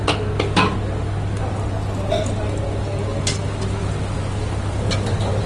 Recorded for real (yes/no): yes